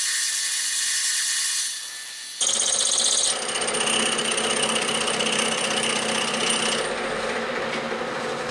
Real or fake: real